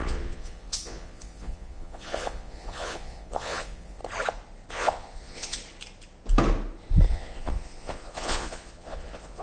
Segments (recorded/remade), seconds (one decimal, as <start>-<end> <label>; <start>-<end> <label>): 0.0-4.0 remade; 4.0-4.7 recorded; 4.7-5.6 remade; 5.6-7.1 recorded; 7.1-9.4 remade